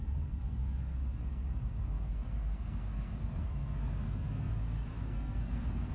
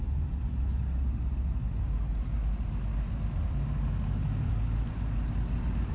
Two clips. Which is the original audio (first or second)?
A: second